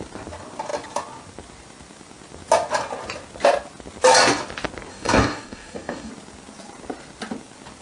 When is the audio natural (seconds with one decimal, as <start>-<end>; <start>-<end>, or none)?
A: 0.0-4.9; 6.1-7.8